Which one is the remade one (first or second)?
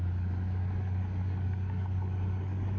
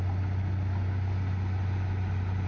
first